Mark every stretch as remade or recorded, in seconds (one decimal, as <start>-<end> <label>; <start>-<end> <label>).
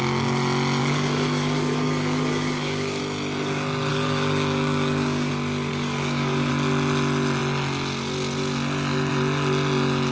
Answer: 0.0-0.8 recorded; 0.8-3.0 remade; 3.0-3.9 recorded; 3.9-5.3 remade; 5.3-5.7 recorded; 5.7-6.5 remade; 6.5-10.1 recorded